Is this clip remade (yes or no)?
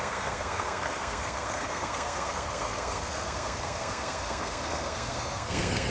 yes